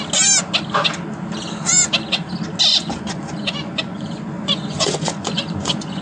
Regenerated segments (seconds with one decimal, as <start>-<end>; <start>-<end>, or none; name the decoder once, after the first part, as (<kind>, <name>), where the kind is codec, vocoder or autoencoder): 2.7-6.0 (vocoder, Vocos)